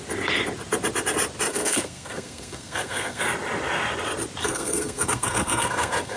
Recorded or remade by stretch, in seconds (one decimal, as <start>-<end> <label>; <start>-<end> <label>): 0.0-1.5 recorded; 1.5-3.2 remade; 3.2-4.4 recorded; 4.4-6.2 remade